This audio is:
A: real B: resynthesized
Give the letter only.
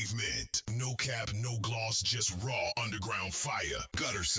A